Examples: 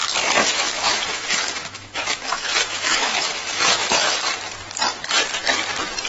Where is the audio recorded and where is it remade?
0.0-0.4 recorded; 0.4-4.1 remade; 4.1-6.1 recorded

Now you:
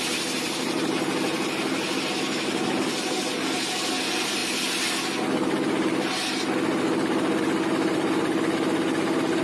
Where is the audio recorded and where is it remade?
0.0-9.4 recorded

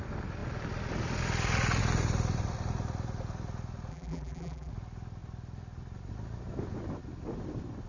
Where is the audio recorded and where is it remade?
0.0-3.9 recorded; 3.9-4.7 remade; 4.7-7.9 recorded

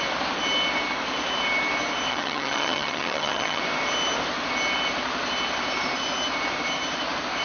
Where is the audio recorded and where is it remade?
0.0-2.1 recorded; 2.1-3.6 remade; 3.6-7.4 recorded

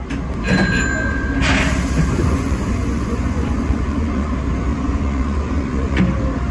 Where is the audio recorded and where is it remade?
0.0-2.2 recorded; 2.2-4.3 remade; 4.3-4.7 recorded; 4.7-6.0 remade; 6.0-6.5 recorded

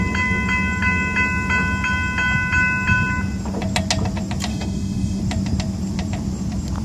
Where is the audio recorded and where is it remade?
0.0-4.5 recorded; 4.5-5.2 remade; 5.2-6.8 recorded

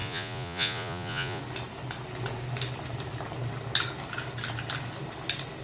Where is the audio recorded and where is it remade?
0.0-1.4 remade; 1.4-5.6 recorded

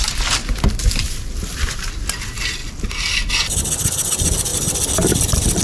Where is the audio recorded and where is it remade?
0.0-0.4 recorded; 0.4-1.7 remade; 1.7-5.6 recorded